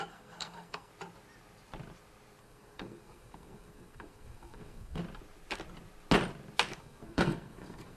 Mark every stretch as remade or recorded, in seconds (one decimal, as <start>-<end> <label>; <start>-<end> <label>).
0.0-0.9 remade; 0.9-2.4 recorded; 2.4-5.0 remade; 5.0-6.8 recorded; 6.8-8.0 remade